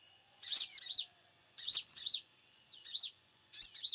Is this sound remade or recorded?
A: remade